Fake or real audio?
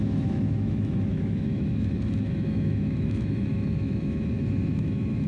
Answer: fake